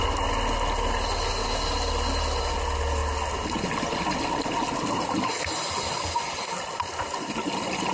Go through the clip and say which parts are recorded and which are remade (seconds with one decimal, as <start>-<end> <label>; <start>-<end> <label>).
0.0-7.9 recorded